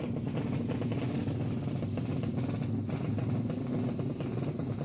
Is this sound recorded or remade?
recorded